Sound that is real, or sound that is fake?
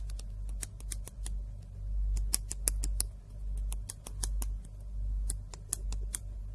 real